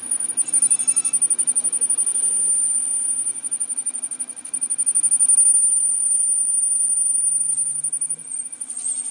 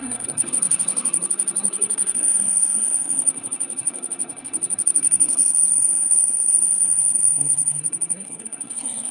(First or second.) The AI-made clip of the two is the second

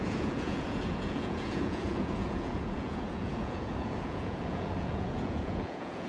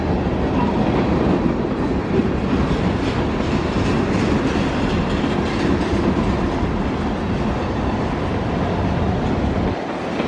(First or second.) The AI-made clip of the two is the first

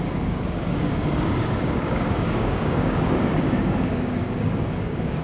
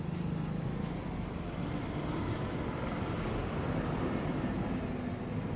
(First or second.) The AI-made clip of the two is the first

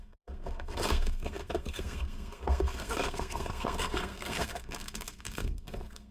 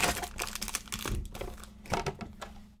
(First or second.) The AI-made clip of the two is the first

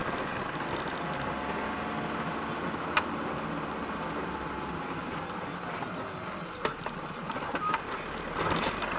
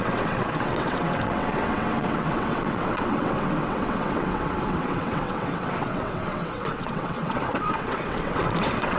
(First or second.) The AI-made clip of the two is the second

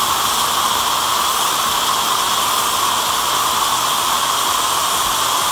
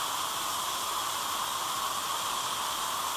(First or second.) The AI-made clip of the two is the second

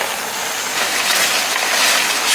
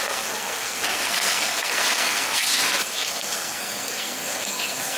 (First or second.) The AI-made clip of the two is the second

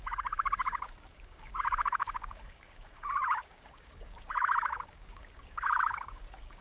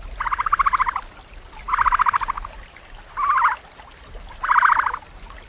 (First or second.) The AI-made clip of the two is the first